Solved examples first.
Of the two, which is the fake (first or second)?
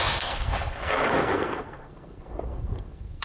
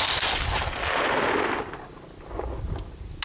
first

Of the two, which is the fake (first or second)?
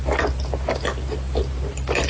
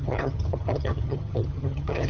second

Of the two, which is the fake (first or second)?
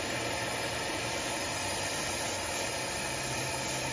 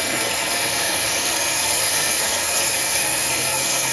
second